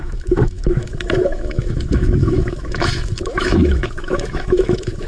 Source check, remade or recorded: remade